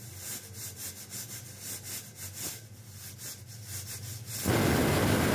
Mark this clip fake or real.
real